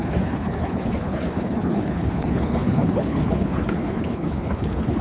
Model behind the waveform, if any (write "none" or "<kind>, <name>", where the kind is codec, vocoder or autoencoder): codec, HILCodec